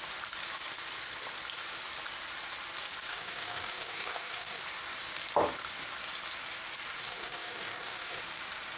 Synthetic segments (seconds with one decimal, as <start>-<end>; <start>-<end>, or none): 3.1-4.6; 7.0-8.2